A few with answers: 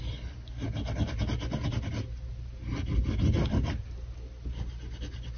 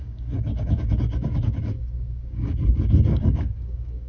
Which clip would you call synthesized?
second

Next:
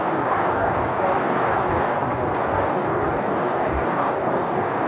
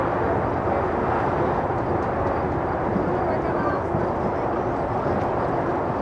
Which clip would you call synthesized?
first